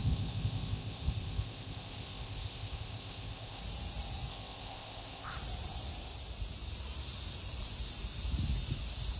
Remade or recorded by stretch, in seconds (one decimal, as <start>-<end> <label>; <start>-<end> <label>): 0.0-3.6 remade; 3.6-4.3 recorded; 4.3-5.3 remade; 5.3-9.2 recorded